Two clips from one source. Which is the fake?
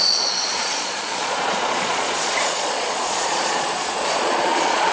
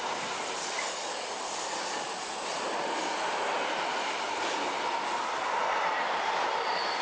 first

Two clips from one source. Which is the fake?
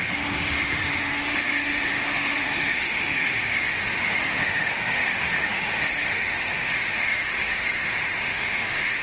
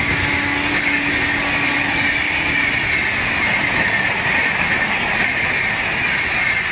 first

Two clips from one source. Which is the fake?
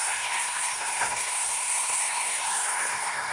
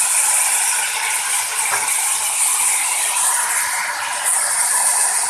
first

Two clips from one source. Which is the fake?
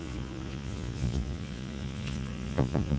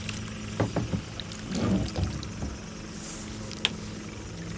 first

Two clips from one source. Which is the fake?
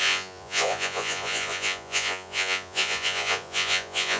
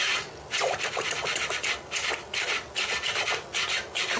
first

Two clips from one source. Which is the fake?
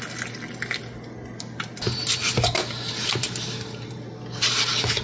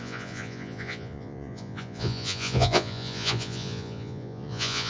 second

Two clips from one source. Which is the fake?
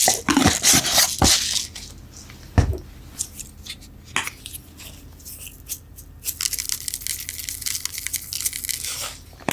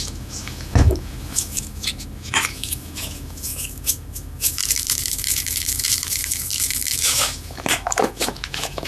second